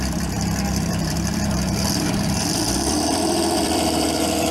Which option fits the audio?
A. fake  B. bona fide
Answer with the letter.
A